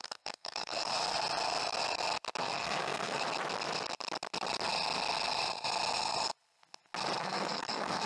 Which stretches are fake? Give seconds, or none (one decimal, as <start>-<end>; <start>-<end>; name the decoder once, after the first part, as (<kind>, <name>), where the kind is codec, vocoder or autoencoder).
0.0-0.9 (codec, SNAC); 2.4-3.2; 7.2-8.1